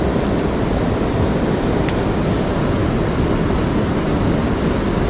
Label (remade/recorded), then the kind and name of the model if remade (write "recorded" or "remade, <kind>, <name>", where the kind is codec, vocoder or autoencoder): recorded